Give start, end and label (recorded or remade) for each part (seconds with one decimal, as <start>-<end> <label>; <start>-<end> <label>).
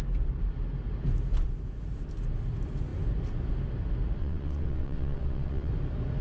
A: 0.0-4.2 recorded; 4.2-5.7 remade; 5.7-6.2 recorded